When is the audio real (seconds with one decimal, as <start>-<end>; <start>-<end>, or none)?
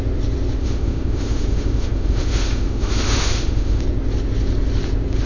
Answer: 0.0-0.6; 3.8-5.3